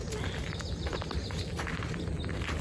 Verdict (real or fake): real